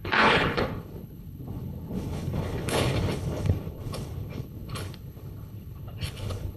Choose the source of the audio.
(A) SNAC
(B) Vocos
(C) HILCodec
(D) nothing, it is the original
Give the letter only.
C